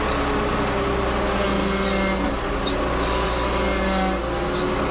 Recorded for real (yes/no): yes